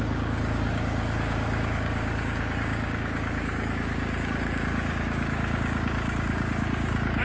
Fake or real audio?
fake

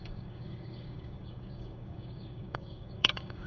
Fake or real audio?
fake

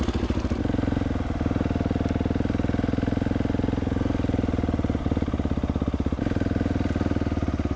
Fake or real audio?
real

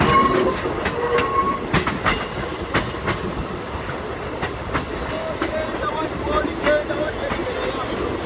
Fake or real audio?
real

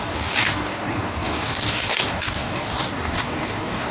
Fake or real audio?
fake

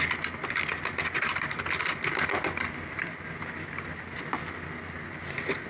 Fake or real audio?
real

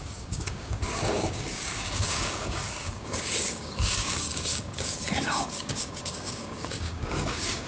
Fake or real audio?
fake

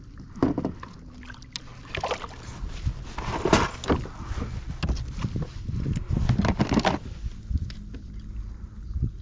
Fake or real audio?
real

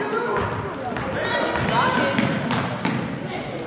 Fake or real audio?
real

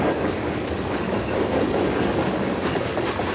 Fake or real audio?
fake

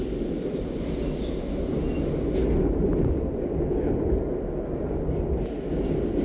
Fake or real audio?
real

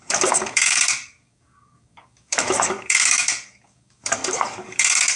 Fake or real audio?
fake